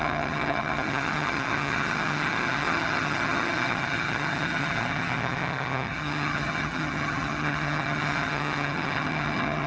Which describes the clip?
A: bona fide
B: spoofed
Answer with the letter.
B